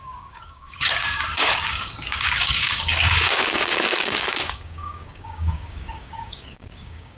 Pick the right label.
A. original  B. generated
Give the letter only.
B